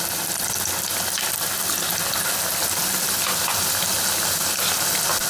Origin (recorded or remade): recorded